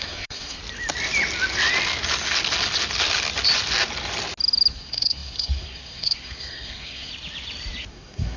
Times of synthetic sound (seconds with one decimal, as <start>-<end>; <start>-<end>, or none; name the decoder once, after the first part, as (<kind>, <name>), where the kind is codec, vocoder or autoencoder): 0.0-0.6 (codec, SNAC); 4.7-7.1; 7.9-8.4